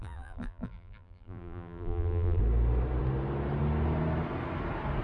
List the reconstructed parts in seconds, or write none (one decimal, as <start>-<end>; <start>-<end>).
0.0-2.4